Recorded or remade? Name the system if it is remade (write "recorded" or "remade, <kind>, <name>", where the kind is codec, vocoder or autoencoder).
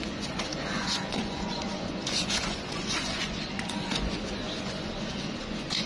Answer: remade, vocoder, Vocos